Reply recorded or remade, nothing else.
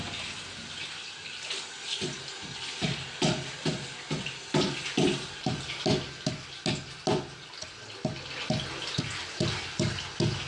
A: recorded